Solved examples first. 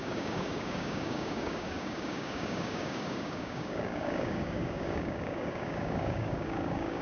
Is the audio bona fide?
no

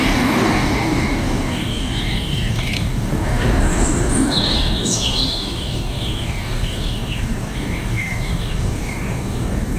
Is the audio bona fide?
no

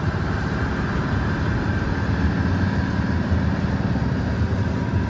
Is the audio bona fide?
yes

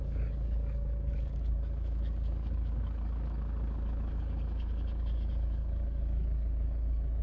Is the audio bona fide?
no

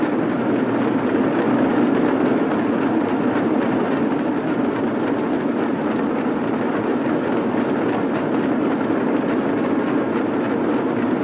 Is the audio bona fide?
yes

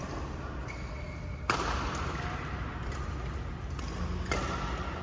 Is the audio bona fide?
yes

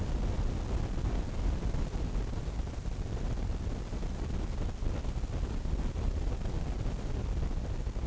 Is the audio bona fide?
yes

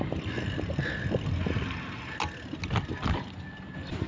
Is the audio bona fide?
yes